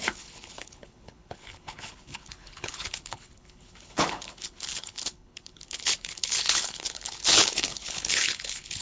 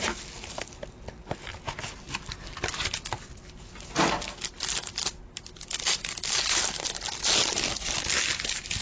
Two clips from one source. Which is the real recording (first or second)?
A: second